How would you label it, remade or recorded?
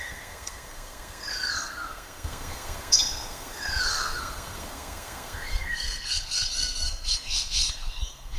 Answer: remade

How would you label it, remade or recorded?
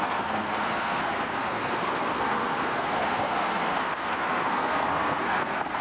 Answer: remade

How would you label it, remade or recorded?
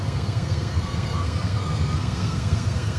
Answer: remade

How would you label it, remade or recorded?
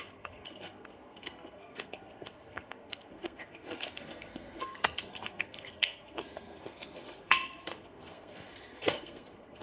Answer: remade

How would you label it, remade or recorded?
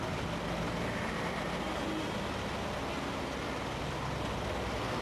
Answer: recorded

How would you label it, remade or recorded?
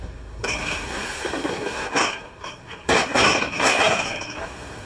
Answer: remade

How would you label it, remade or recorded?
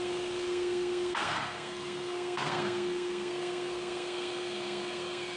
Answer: remade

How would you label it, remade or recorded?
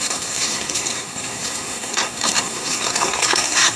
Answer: remade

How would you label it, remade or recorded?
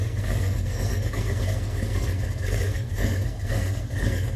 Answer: remade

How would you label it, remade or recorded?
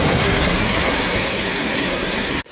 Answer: remade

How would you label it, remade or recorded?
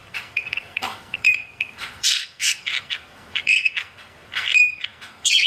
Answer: remade